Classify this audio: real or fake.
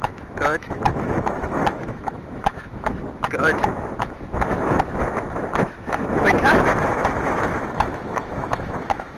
fake